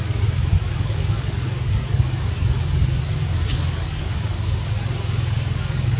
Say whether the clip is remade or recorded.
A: remade